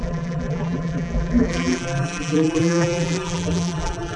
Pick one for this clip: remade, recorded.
remade